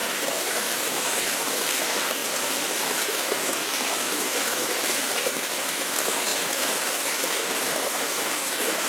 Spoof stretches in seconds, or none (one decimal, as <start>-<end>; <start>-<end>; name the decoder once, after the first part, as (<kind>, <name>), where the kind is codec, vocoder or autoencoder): 0.0-8.9 (codec, DAC)